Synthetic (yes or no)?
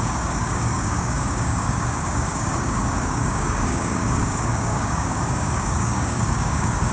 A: yes